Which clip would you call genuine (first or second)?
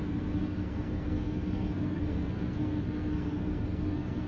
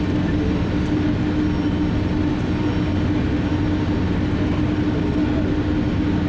second